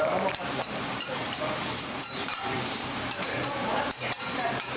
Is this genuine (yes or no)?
no